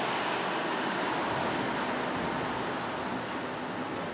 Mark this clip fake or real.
real